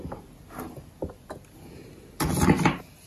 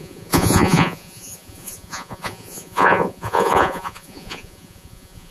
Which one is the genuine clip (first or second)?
first